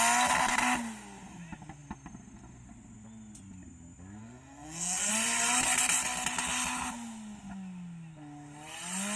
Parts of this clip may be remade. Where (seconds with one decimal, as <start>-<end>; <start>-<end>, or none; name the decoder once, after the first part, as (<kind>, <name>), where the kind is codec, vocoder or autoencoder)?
4.2-5.1 (codec, SNAC)